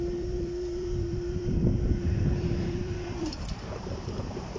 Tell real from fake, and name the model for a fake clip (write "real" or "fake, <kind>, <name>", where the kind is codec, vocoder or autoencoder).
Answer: fake, vocoder, BigVGAN v2